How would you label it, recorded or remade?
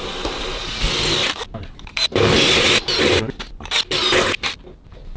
recorded